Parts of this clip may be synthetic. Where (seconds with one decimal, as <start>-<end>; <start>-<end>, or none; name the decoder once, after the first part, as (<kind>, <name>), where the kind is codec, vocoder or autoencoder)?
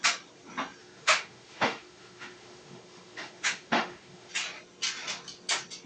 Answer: 0.8-4.3 (autoencoder, DAC-VAE)